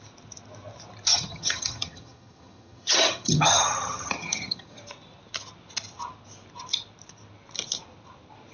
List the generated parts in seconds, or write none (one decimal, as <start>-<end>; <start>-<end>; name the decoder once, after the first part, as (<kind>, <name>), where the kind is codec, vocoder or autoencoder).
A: 1.1-4.8 (vocoder, HiFi-GAN)